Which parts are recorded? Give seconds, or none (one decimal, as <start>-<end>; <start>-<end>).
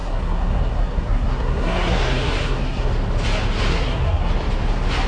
2.9-3.7; 4.3-5.1